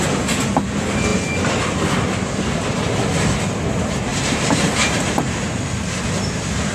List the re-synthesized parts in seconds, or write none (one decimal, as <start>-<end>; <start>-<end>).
4.1-5.6